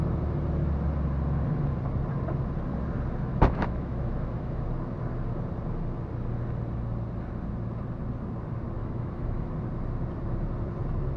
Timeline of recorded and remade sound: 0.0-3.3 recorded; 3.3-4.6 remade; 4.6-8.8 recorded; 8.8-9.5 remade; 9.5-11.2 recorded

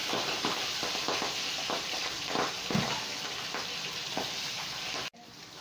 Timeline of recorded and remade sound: 0.0-0.8 remade; 0.8-5.6 recorded

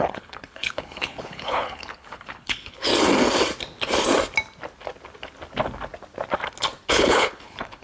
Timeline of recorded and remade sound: 0.0-2.9 remade; 2.9-6.9 recorded; 6.9-7.8 remade